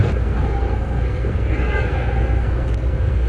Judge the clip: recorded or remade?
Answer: remade